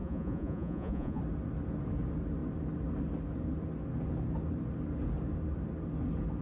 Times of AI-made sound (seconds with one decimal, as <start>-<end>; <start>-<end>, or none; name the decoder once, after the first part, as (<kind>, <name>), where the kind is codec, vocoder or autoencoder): 0.0-1.2 (vocoder, Vocos)